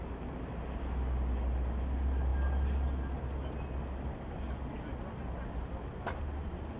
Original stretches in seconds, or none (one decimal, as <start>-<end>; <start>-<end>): 0.0-6.8